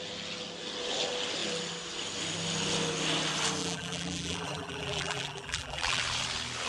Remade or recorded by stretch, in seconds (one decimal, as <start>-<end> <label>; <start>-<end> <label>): 0.0-3.6 recorded; 3.6-6.0 remade; 6.0-6.7 recorded